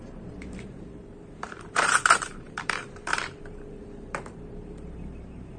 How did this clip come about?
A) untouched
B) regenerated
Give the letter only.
B